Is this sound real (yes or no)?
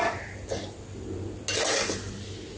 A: yes